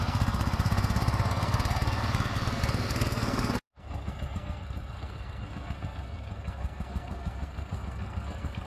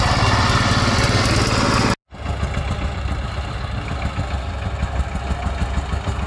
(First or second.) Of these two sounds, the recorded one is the second